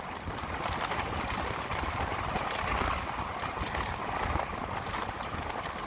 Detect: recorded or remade recorded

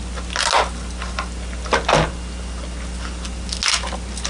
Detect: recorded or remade recorded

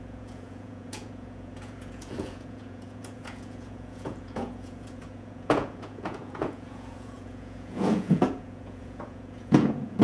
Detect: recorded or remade remade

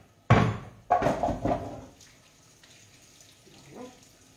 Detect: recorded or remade recorded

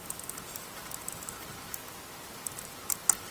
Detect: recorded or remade recorded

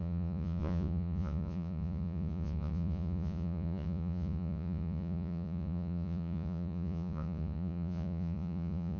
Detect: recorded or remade remade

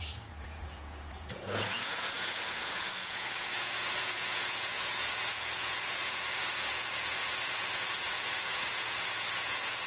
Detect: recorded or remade remade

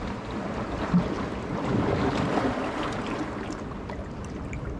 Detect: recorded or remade recorded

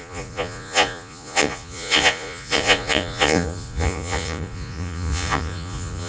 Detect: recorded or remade remade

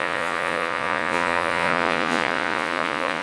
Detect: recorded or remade remade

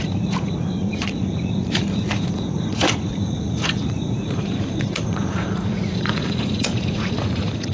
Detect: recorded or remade remade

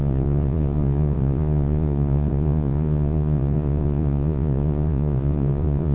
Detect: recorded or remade remade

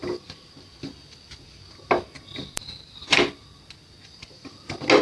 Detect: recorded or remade recorded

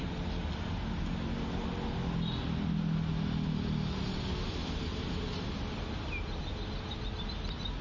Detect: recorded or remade recorded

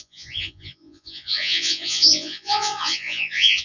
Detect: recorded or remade remade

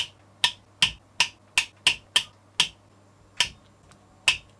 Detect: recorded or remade recorded